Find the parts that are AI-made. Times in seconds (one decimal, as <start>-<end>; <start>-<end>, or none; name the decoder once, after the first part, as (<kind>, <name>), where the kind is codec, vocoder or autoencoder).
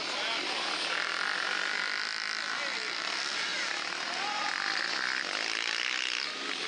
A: none